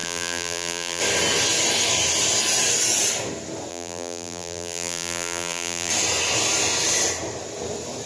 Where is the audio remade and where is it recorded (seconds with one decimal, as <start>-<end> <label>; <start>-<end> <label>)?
0.0-1.0 remade; 1.0-3.7 recorded; 3.7-5.9 remade; 5.9-8.1 recorded